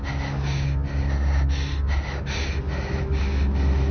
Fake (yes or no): no